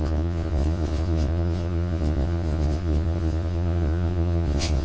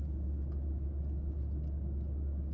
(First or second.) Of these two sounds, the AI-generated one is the first